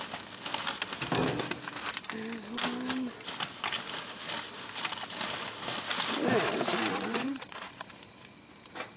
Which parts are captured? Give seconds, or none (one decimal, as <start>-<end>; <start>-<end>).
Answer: 0.0-6.9; 7.8-9.0